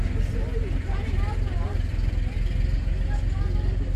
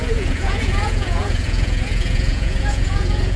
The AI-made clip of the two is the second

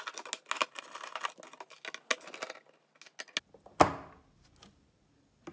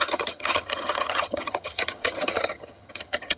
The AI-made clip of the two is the second